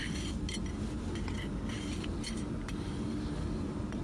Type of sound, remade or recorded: recorded